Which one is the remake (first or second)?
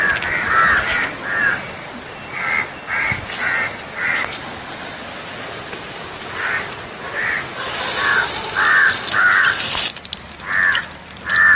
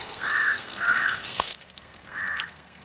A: second